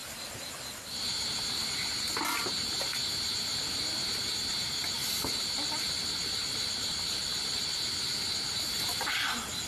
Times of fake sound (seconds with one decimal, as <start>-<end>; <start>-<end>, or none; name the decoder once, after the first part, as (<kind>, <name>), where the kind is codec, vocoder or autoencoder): none